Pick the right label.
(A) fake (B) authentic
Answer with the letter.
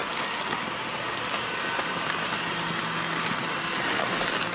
B